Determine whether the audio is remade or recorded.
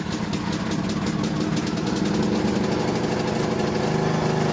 recorded